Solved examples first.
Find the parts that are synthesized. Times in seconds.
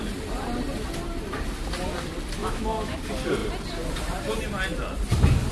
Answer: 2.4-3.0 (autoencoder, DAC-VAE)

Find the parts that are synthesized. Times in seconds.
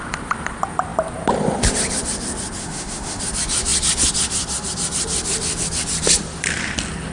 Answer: 2.6-3.2 (autoencoder, DAC-VAE)